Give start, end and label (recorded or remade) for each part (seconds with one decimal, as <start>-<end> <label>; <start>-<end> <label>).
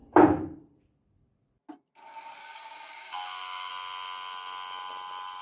0.0-2.4 recorded; 2.4-3.7 remade; 3.7-5.4 recorded